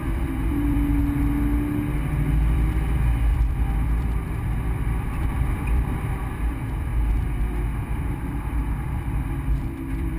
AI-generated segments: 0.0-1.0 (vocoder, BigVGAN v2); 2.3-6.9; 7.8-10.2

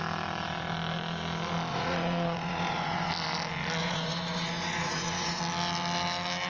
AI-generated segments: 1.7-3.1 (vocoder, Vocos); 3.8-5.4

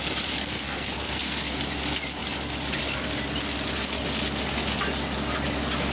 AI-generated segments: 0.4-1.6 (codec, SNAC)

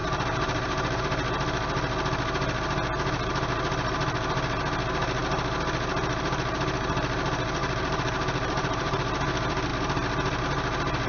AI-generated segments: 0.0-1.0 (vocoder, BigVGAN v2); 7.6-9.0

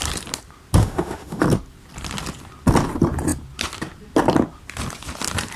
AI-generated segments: 0.8-1.4 (autoencoder, DAC-VAE)

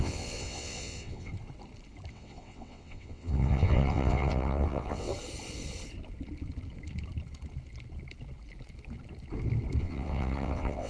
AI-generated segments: 0.0-1.3 (vocoder, WaveNeXt); 2.1-5.1; 9.8-10.9